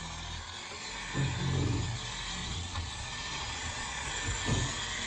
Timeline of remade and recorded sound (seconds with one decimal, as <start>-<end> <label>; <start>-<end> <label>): 0.0-2.4 recorded; 2.4-4.1 remade; 4.1-5.1 recorded